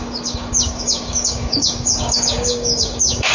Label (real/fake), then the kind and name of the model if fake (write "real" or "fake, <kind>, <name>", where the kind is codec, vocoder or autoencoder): fake, codec, DAC